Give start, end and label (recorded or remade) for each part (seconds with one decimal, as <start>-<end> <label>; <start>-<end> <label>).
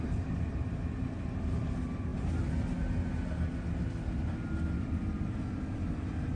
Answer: 0.0-2.1 remade; 2.1-4.8 recorded; 4.8-6.4 remade